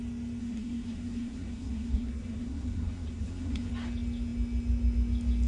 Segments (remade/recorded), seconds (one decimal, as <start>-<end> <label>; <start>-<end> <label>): 0.0-0.4 recorded; 0.4-3.7 remade; 3.7-5.5 recorded